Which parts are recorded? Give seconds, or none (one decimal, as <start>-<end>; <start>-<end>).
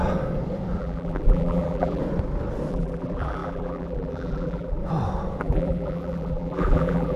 0.0-0.8; 2.0-2.7; 4.8-5.4